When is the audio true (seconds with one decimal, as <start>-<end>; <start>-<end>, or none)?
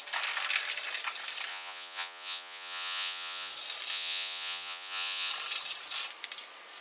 0.0-1.5; 3.5-3.9; 5.3-6.8